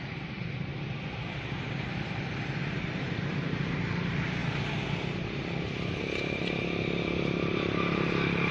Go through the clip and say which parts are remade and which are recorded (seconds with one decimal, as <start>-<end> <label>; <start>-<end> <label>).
0.0-0.7 remade; 0.7-1.3 recorded; 1.3-4.4 remade; 4.4-6.0 recorded; 6.0-8.5 remade